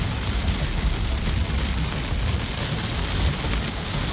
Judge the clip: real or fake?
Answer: real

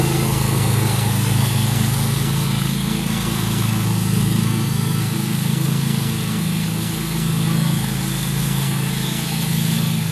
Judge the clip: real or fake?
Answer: fake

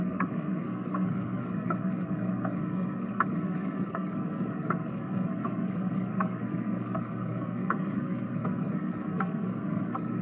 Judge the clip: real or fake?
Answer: fake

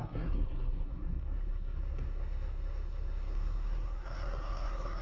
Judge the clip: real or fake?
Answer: fake